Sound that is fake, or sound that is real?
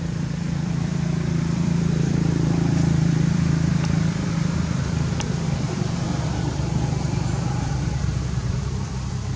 fake